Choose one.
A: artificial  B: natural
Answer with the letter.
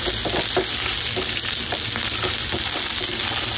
B